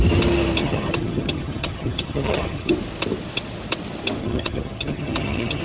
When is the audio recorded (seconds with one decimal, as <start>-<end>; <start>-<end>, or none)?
0.0-0.6; 2.7-4.2